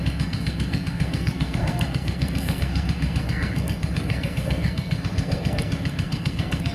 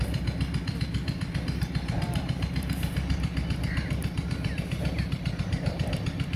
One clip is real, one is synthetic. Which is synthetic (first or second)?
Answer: first